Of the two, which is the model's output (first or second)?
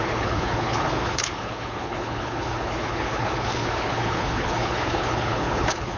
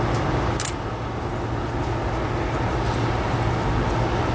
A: first